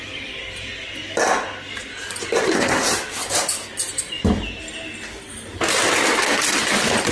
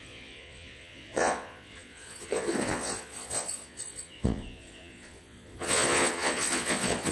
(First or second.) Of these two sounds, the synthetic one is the second